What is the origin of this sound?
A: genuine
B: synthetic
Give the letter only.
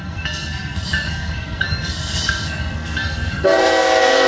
B